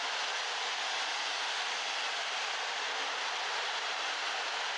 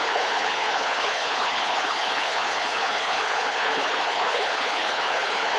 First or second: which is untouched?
first